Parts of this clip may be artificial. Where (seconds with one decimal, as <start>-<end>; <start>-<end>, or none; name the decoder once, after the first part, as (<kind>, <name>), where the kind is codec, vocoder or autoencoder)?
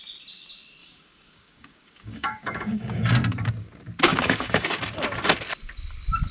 0.8-3.0 (codec, DAC); 4.1-4.8